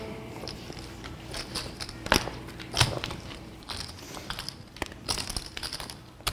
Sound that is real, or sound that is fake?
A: fake